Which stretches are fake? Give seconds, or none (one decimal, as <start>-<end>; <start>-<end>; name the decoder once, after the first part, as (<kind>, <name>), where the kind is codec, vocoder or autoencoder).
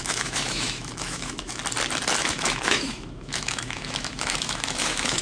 0.0-1.6 (autoencoder, DAC-VAE); 2.2-5.2